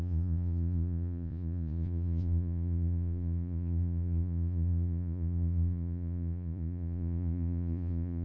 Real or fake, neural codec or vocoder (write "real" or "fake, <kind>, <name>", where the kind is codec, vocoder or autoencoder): fake, vocoder, Vocos